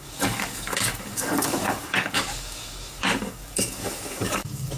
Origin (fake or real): fake